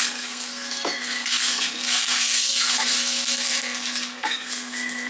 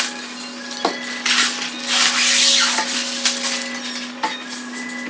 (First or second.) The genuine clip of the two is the second